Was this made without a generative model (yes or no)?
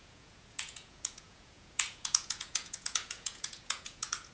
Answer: no